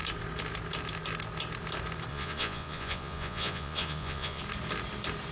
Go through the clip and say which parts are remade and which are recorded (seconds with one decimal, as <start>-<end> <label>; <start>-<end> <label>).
0.0-2.1 recorded; 2.1-4.4 remade; 4.4-5.3 recorded